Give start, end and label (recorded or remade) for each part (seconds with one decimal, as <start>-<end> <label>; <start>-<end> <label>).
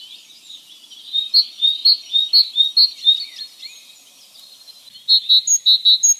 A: 0.0-6.2 recorded